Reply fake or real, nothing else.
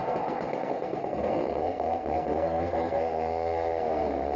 fake